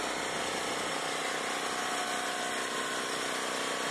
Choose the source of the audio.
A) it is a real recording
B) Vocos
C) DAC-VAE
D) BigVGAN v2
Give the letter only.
A